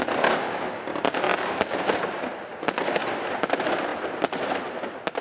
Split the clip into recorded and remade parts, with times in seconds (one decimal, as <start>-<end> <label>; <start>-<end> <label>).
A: 0.0-5.2 recorded